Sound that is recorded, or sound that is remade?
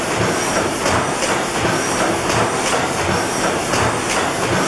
recorded